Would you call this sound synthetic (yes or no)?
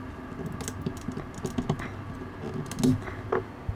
no